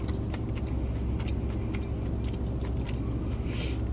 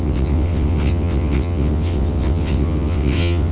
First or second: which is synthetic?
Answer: second